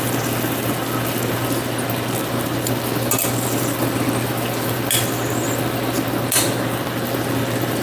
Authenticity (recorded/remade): recorded